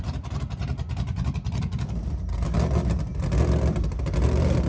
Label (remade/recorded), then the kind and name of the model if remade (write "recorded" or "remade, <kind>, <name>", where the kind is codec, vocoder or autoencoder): recorded